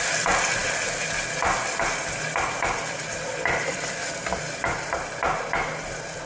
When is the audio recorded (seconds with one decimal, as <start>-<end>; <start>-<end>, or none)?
0.0-6.3